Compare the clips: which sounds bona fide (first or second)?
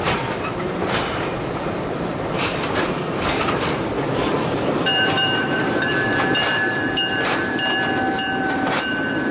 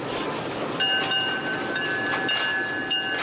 second